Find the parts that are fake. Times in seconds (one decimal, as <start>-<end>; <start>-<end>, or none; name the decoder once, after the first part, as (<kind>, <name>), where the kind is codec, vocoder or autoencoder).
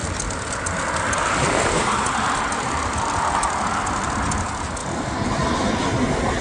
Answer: none